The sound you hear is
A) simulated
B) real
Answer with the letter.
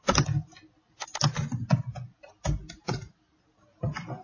B